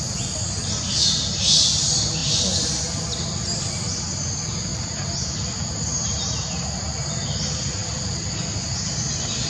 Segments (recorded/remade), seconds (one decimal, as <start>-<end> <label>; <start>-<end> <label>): 0.0-2.2 recorded; 2.2-2.8 remade; 2.8-7.8 recorded; 7.8-8.3 remade; 8.3-9.5 recorded